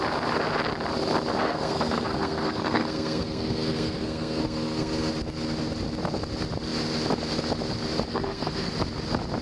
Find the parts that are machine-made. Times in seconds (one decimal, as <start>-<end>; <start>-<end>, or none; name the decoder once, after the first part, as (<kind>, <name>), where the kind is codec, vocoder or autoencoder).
1.4-5.1 (codec, SNAC); 8.1-8.7